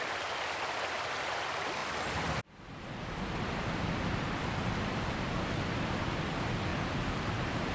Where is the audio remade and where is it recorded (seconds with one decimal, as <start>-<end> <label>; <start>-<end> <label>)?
0.0-6.7 recorded; 6.7-7.7 remade